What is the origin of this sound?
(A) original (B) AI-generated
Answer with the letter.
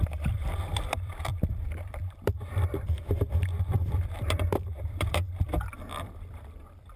B